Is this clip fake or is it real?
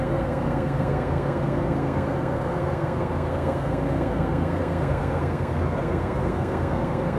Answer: fake